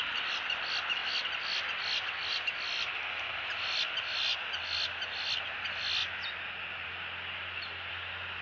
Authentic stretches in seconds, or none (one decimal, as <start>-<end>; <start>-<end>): 0.0-8.4